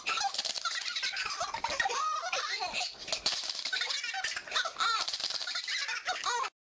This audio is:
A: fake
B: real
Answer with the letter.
B